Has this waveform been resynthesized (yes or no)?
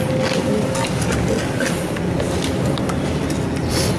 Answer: no